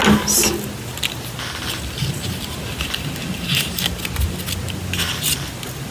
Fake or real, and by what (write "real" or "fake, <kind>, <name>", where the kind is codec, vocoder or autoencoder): real